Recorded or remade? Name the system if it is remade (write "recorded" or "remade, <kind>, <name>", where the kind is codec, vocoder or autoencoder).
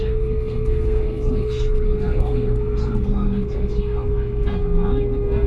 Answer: remade, codec, SNAC